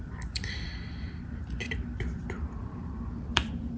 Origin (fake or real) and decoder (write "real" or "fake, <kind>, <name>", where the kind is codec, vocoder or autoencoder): fake, vocoder, BigVGAN v2